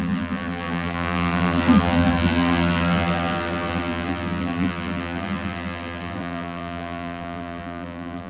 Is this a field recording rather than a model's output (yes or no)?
no